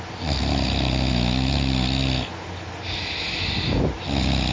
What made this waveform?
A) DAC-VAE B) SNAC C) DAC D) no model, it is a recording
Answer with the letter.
D